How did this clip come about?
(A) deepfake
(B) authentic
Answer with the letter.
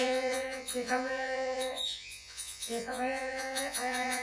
A